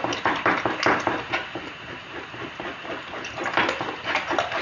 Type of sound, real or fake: real